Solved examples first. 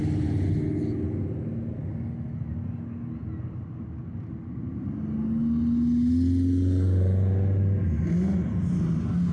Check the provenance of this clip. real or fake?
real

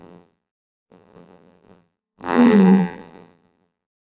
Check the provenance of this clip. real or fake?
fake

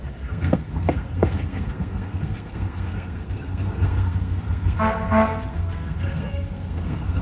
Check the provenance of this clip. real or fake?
fake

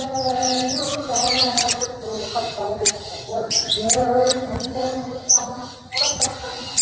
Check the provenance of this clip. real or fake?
fake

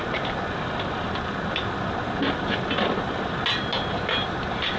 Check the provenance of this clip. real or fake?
real